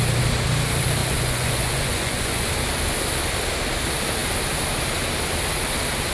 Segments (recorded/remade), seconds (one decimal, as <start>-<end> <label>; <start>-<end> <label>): 0.0-1.0 recorded; 1.0-2.5 remade; 2.5-6.1 recorded

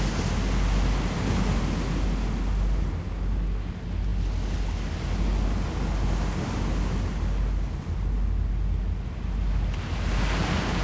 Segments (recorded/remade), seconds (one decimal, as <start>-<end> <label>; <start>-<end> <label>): 0.0-10.8 recorded

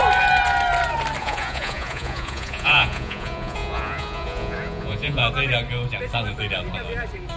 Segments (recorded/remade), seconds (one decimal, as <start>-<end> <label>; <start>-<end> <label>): 0.0-1.2 recorded; 1.2-5.2 remade; 5.2-7.4 recorded

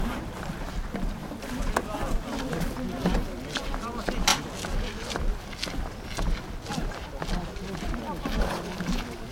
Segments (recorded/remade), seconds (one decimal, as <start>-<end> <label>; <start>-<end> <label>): 0.0-9.3 recorded

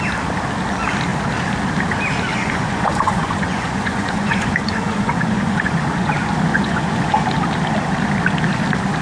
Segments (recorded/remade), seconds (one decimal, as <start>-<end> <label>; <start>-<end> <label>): 0.0-2.3 recorded; 2.3-6.1 remade; 6.1-6.5 recorded; 6.5-7.1 remade; 7.1-9.0 recorded

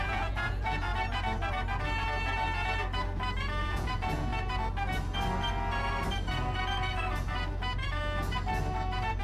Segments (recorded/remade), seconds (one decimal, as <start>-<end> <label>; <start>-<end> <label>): 0.0-0.9 remade; 0.9-3.6 recorded; 3.6-4.3 remade; 4.3-9.2 recorded